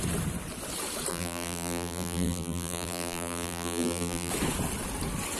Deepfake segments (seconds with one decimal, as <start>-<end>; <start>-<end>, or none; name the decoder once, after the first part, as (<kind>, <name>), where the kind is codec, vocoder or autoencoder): 1.1-4.3 (vocoder, BigVGAN v2)